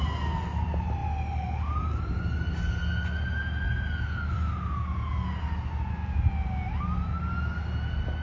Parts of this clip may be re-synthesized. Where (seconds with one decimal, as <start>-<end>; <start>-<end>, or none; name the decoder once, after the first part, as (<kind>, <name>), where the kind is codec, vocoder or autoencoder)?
none